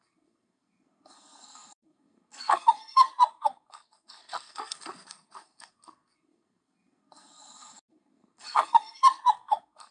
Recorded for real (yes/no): no